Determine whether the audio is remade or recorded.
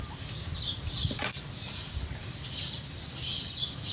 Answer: recorded